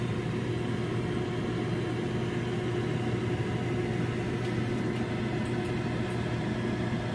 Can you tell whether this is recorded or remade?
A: recorded